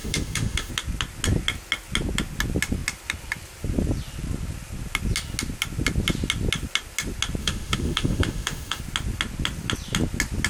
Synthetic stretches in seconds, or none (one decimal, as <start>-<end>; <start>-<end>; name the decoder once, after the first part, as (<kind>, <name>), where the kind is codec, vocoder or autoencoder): 0.0-0.7 (autoencoder, DAC-VAE); 7.4-8.8